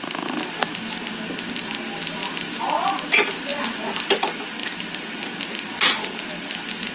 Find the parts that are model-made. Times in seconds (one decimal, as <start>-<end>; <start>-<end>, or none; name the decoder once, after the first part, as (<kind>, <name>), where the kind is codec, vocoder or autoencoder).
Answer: 3.5-4.1 (vocoder, BigVGAN v2); 4.6-5.2